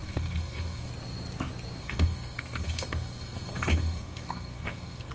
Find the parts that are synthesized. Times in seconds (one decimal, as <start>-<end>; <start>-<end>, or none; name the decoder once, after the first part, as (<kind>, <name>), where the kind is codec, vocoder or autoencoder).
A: 0.0-0.9 (codec, SNAC); 1.8-5.1